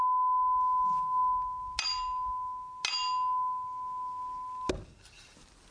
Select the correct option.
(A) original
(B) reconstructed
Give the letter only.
A